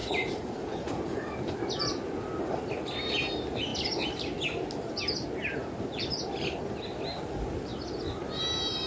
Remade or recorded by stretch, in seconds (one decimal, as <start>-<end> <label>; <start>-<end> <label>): 0.0-1.3 remade; 1.3-8.9 recorded

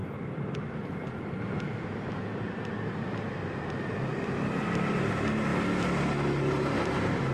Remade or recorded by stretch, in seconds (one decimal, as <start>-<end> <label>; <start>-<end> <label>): 0.0-7.3 recorded

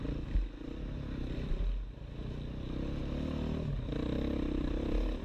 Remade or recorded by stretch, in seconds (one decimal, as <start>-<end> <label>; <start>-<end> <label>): 0.0-5.2 recorded

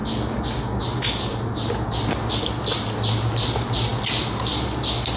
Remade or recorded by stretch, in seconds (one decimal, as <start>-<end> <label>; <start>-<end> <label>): 0.0-5.2 recorded

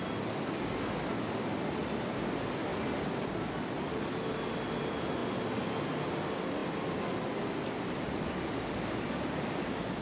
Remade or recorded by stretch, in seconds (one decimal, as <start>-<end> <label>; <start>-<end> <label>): 0.0-10.0 recorded

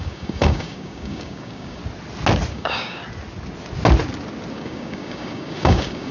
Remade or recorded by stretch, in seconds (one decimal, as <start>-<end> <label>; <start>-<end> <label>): 0.0-1.8 remade; 1.8-2.5 recorded; 2.5-3.0 remade; 3.0-4.5 recorded; 4.5-6.1 remade

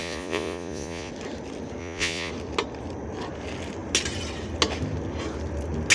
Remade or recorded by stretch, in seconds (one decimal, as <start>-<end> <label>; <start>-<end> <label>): 0.0-1.1 remade; 1.1-1.8 recorded; 1.8-2.3 remade; 2.3-5.9 recorded

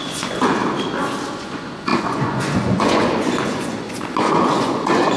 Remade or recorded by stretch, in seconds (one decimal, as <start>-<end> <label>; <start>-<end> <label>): 0.0-0.6 remade; 0.6-1.3 recorded; 1.3-5.2 remade